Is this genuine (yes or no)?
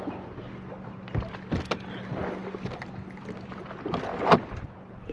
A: yes